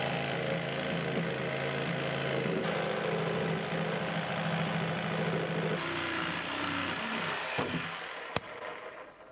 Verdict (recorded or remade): recorded